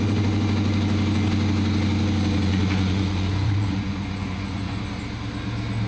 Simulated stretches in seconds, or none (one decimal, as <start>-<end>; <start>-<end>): 2.5-4.9